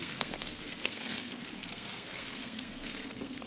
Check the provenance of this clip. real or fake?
fake